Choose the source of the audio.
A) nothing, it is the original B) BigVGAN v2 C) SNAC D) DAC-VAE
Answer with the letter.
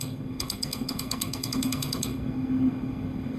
C